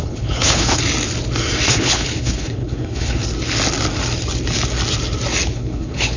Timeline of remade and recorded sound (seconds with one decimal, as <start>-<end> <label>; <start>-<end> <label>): 0.0-0.8 remade; 0.8-1.7 recorded; 1.7-3.2 remade; 3.2-5.5 recorded; 5.5-6.2 remade